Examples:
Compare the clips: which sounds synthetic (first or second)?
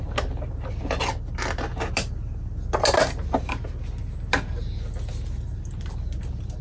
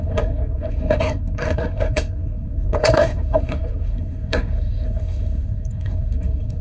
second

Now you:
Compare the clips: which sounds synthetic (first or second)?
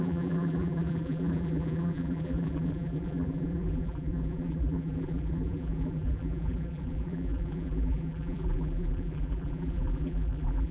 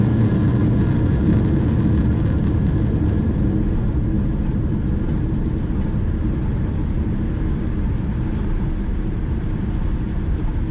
first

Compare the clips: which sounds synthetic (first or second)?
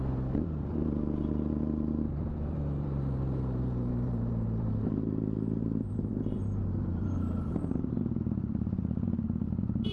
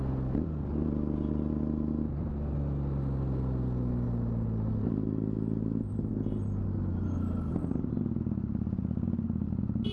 first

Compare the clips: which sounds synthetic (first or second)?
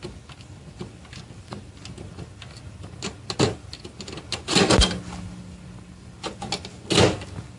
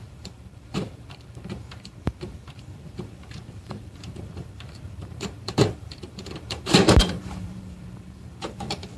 second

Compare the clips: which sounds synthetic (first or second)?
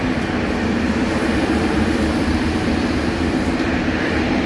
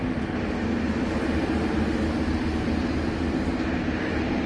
first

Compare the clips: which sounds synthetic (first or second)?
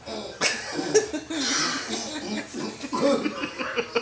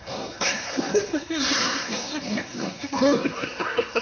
second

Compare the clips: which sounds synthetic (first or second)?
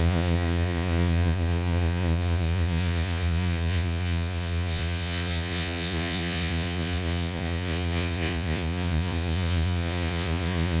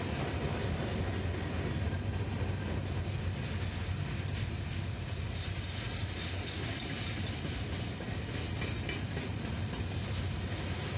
first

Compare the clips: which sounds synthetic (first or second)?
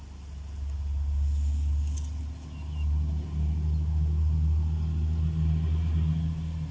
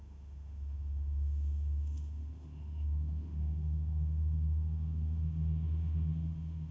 second